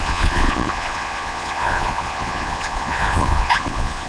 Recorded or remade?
remade